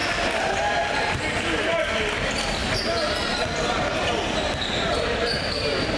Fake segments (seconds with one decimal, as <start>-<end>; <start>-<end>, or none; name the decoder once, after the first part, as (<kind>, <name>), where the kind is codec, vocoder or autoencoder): none